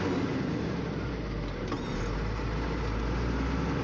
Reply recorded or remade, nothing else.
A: recorded